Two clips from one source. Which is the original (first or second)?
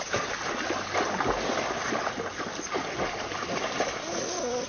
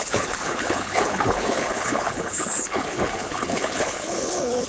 first